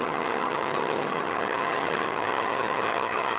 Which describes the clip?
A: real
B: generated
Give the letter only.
B